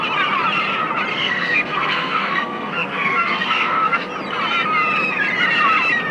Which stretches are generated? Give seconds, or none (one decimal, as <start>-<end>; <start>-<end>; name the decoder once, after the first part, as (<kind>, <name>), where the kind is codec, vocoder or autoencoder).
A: 1.1-4.1 (codec, SNAC)